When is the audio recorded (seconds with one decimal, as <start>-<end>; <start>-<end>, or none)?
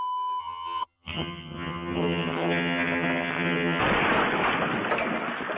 0.0-0.4; 3.8-5.6